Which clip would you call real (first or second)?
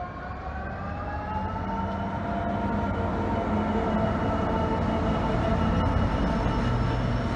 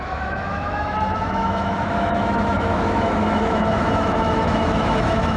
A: first